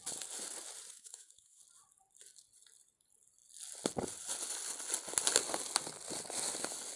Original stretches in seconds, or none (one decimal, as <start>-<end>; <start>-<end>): 0.0-0.9; 1.6-7.0